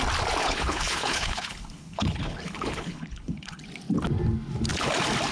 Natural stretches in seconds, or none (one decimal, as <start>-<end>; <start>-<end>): 0.0-0.4; 3.6-5.3